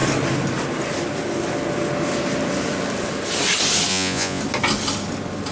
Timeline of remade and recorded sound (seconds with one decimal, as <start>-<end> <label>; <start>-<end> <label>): 0.0-3.9 recorded; 3.9-4.4 remade; 4.4-5.5 recorded